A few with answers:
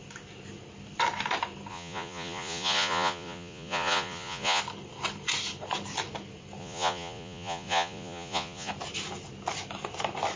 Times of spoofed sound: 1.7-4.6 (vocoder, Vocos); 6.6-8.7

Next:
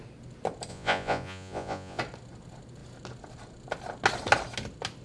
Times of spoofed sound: 0.7-2.0 (vocoder, Vocos)

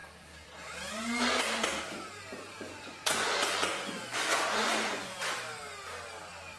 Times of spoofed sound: 2.5-5.2 (vocoder, Vocos)

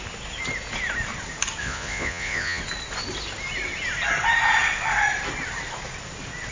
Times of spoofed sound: 1.6-2.6 (vocoder, Vocos)

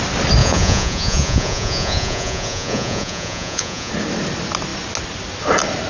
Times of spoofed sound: 0.4-3.9 (vocoder, Vocos)

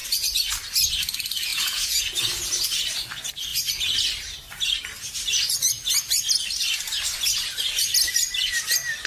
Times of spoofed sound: 1.5-2.0 (vocoder, Vocos)